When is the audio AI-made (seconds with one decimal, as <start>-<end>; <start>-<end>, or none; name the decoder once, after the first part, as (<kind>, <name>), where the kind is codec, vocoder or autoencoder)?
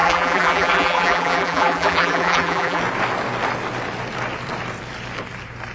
0.0-2.8 (vocoder, BigVGAN v2)